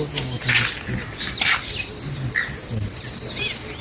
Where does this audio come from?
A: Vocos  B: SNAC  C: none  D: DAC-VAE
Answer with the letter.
C